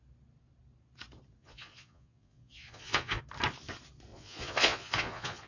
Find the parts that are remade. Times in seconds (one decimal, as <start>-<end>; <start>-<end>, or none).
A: 1.4-3.2; 4.1-5.5